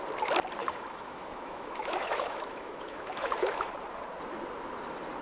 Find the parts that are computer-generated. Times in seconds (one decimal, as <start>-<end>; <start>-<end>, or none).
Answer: 0.6-3.7